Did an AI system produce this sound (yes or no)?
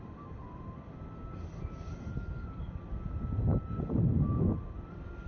no